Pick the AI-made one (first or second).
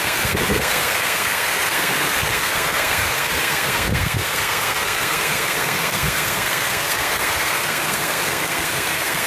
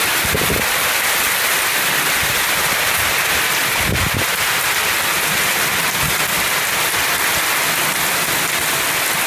first